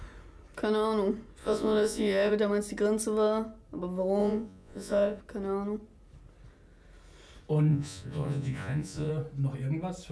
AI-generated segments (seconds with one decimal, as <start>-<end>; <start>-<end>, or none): 1.4-2.3; 4.2-5.2; 7.7-9.1

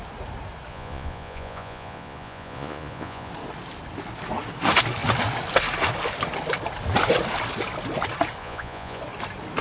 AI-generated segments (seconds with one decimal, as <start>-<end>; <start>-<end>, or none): 0.7-3.3; 8.4-9.0

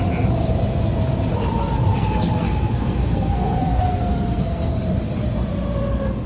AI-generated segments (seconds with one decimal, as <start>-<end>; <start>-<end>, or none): 1.9-4.8

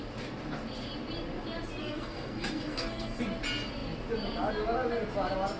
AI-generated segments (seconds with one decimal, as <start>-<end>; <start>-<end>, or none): 1.8-3.2

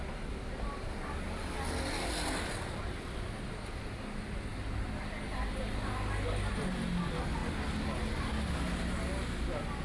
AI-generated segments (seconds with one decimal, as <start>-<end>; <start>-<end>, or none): none

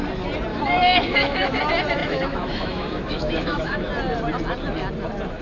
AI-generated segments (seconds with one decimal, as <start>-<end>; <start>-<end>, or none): 0.5-1.6; 2.0-3.9

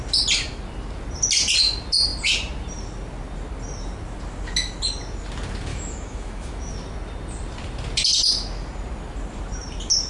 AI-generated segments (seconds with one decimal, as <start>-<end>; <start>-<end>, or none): 5.7-6.7

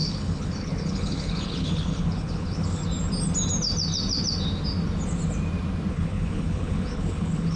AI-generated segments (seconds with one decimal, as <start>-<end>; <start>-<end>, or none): 0.0-2.8; 5.9-7.6